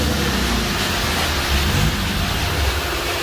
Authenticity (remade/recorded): recorded